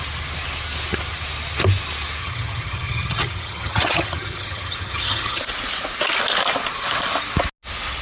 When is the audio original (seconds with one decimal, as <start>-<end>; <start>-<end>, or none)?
0.0-2.2; 5.4-8.0